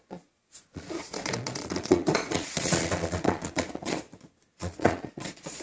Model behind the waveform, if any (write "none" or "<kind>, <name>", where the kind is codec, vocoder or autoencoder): vocoder, Vocos